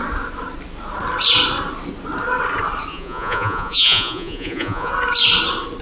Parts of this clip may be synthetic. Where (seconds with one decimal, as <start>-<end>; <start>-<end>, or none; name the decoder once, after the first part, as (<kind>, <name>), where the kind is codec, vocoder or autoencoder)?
2.9-4.9 (vocoder, Vocos)